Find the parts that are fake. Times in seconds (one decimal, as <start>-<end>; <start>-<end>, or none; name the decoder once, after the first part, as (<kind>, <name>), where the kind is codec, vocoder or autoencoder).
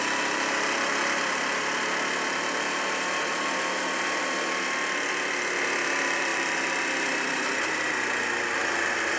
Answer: none